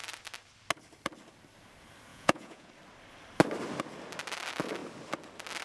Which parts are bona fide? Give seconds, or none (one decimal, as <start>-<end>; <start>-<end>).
0.0-2.1; 2.7-5.6